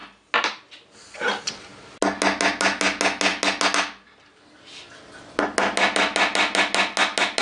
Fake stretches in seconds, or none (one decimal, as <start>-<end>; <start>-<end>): none